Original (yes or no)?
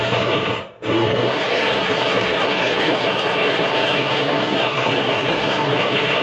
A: no